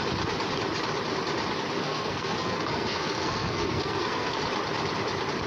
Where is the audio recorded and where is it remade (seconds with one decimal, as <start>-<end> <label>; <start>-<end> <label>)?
0.0-1.8 recorded; 1.8-4.4 remade; 4.4-5.5 recorded